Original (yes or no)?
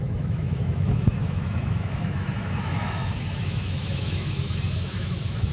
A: no